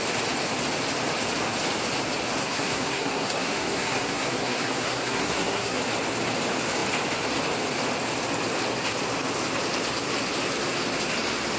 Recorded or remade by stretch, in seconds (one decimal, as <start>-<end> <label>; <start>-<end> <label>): 0.0-2.4 recorded; 2.4-5.8 remade; 5.8-11.6 recorded